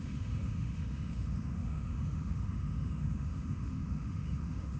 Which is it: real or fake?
fake